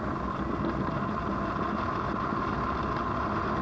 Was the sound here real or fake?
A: real